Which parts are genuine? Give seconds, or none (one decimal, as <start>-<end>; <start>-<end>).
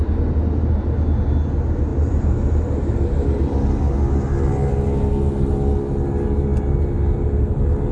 0.0-7.9